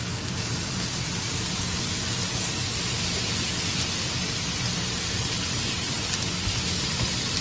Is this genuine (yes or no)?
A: yes